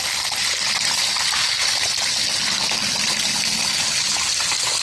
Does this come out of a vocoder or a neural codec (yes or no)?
no